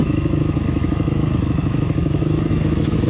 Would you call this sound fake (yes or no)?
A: yes